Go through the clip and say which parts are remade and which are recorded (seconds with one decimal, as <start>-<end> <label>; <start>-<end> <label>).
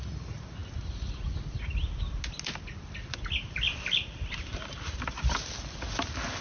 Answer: 0.0-6.4 recorded